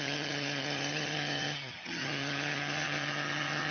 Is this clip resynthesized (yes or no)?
yes